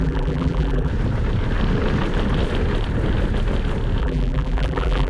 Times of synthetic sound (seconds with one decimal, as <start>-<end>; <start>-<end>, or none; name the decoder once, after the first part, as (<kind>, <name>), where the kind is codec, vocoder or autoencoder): 0.0-0.9 (vocoder, BigVGAN v2); 4.0-5.1